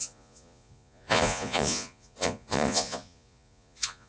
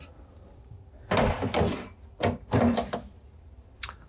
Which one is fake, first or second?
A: first